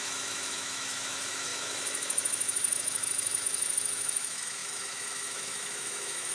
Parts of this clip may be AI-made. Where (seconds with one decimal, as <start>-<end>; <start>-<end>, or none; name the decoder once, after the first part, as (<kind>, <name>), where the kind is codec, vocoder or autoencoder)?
0.0-6.3 (autoencoder, DAC-VAE)